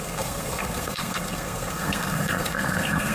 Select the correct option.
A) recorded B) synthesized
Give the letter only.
B